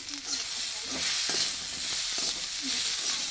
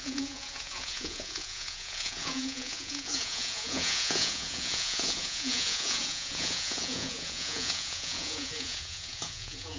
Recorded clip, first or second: first